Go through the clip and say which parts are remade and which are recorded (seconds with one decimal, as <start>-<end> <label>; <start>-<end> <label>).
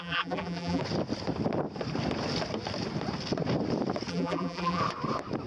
0.0-0.8 remade; 0.8-4.1 recorded; 4.1-4.8 remade; 4.8-5.5 recorded